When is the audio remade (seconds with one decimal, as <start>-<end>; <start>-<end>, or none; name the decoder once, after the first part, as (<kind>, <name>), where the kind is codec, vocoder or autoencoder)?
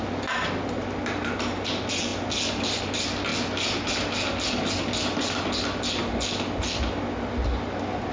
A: none